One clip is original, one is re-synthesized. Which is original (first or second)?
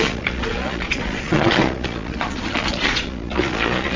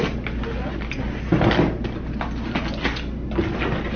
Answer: second